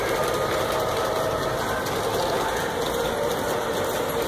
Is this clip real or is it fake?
real